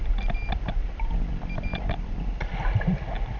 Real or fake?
real